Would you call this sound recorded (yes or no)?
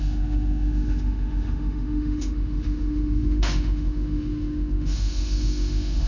no